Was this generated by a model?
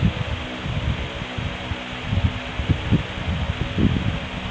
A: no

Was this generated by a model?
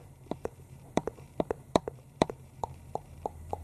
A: yes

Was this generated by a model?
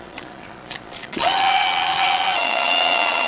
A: yes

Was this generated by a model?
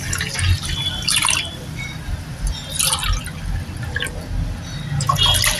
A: no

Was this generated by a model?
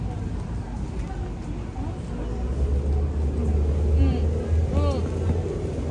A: no